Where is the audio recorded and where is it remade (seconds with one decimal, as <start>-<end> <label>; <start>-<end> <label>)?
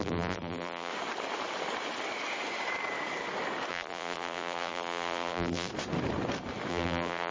0.0-0.9 remade; 0.9-3.7 recorded; 3.7-5.7 remade; 5.7-6.7 recorded; 6.7-7.3 remade